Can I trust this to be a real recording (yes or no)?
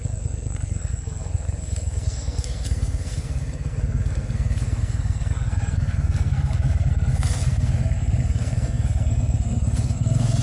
no